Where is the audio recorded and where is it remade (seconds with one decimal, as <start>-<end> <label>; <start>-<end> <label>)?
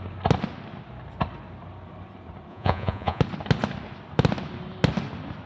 0.0-2.5 recorded; 2.5-3.2 remade; 3.2-5.5 recorded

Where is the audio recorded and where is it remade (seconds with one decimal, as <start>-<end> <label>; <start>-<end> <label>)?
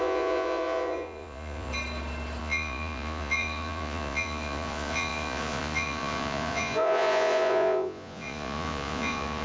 0.0-1.7 remade; 1.7-2.4 recorded; 2.4-9.4 remade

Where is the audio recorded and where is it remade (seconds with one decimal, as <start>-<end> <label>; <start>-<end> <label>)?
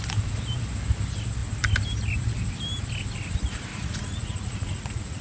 0.0-3.7 recorded; 3.7-5.2 remade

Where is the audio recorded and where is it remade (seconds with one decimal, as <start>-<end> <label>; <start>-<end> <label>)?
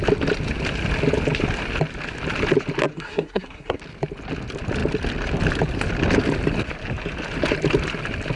0.0-2.9 recorded; 2.9-3.8 remade; 3.8-8.4 recorded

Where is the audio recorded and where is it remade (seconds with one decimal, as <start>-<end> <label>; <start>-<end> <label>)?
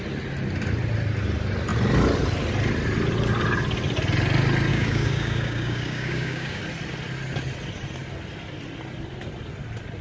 0.0-4.7 recorded; 4.7-6.6 remade; 6.6-10.0 recorded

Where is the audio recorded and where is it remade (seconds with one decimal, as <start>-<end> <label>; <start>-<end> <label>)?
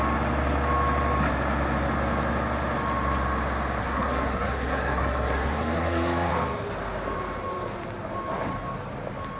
0.0-3.8 recorded; 3.8-6.3 remade; 6.3-9.4 recorded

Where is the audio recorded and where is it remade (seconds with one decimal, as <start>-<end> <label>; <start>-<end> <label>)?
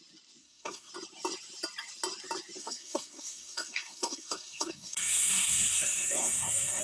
0.0-0.4 recorded; 0.4-0.9 remade; 0.9-2.6 recorded; 2.6-6.8 remade